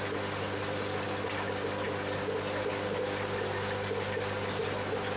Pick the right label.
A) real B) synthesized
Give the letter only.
A